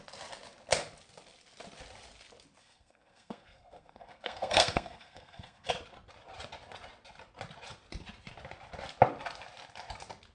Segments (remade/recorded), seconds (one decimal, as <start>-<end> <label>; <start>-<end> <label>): 0.0-2.6 recorded; 2.6-5.7 remade; 5.7-10.3 recorded